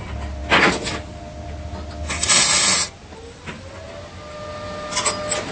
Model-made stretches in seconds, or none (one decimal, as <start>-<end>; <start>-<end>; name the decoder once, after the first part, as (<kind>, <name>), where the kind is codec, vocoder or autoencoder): none